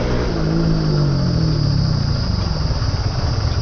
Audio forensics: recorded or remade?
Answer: recorded